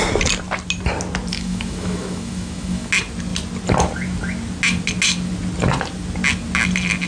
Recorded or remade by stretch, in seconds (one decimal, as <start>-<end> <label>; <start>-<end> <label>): 0.0-1.3 recorded; 1.3-2.9 remade; 2.9-7.1 recorded